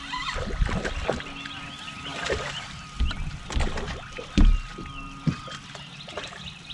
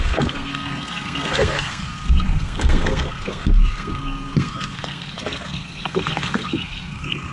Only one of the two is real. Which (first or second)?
first